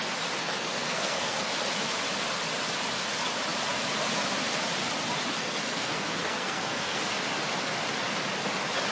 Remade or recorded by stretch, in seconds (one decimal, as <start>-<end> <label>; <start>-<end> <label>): 0.0-0.4 recorded; 0.4-1.5 remade; 1.5-5.4 recorded; 5.4-7.0 remade; 7.0-8.9 recorded